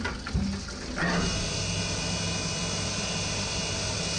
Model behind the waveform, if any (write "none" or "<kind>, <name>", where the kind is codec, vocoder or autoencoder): none